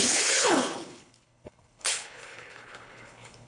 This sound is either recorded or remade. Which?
remade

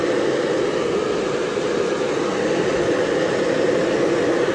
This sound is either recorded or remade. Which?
recorded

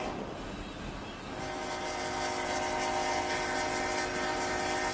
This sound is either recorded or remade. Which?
recorded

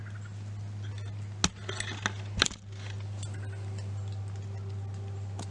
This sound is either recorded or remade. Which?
recorded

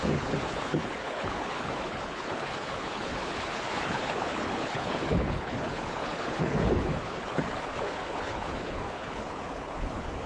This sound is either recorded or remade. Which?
remade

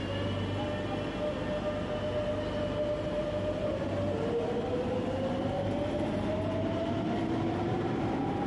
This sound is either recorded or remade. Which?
recorded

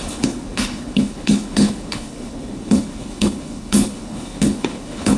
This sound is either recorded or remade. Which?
remade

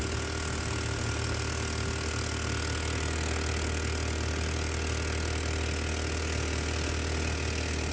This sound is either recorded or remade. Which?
recorded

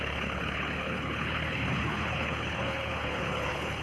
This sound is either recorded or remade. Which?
remade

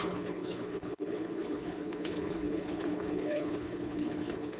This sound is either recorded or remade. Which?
remade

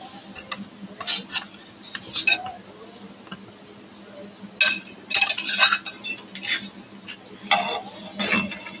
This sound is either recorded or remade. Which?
recorded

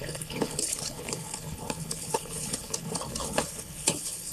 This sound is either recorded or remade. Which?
remade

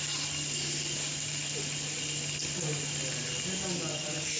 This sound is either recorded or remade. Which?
recorded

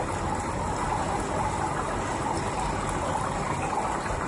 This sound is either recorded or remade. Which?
recorded